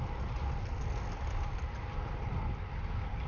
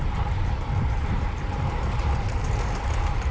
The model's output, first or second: second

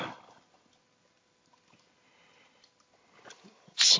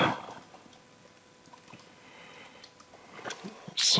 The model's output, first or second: first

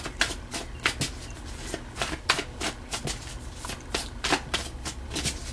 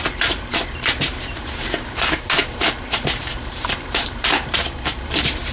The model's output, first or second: second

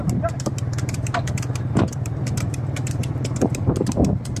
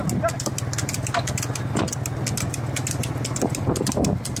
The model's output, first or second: first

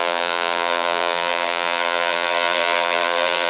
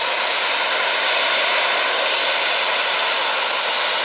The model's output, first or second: first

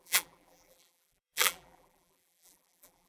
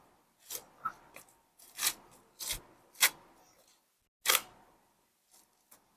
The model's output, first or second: first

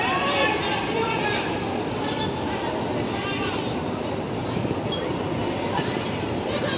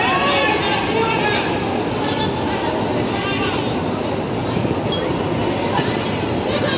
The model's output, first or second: first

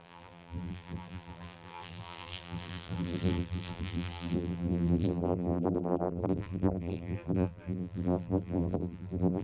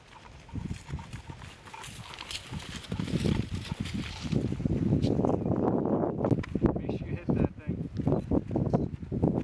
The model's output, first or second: first